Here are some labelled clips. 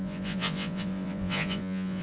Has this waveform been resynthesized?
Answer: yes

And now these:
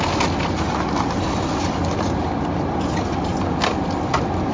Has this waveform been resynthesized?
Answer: no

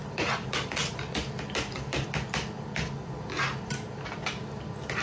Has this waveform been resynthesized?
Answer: no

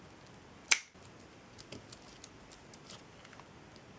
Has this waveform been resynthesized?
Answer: no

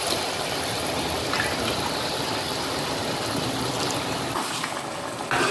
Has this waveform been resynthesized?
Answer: no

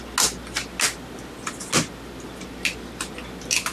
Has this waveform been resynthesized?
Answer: no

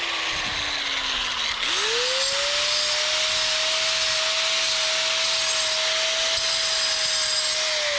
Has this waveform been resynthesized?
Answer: no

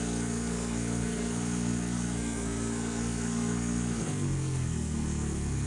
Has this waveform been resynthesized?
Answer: yes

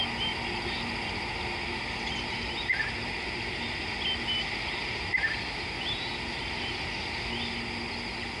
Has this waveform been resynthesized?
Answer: no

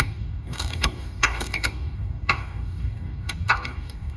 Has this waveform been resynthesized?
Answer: yes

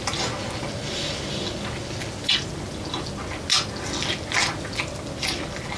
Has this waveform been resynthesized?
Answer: no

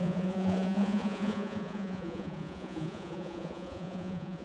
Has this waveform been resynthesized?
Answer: yes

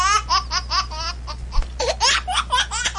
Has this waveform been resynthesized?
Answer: no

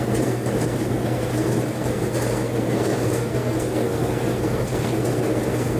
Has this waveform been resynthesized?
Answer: yes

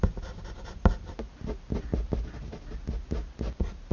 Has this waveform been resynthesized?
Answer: no